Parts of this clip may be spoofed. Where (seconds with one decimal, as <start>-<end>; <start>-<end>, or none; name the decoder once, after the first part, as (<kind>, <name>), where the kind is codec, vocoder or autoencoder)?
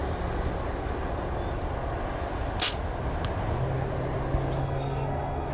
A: 4.6-5.5 (codec, SNAC)